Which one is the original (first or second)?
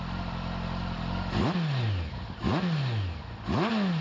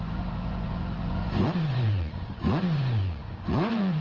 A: first